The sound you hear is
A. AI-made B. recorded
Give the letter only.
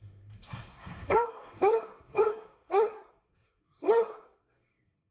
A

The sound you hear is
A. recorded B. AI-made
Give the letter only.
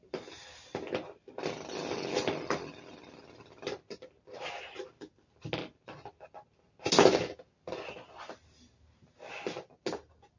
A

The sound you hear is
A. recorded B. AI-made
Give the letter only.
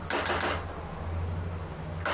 A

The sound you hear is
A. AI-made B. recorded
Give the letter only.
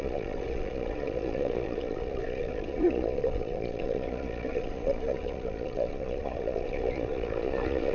A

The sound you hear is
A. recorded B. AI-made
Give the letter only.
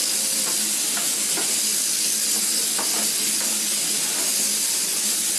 A